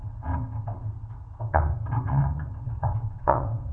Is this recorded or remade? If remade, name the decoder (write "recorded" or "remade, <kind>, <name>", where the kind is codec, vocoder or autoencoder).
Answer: remade, vocoder, WaveNeXt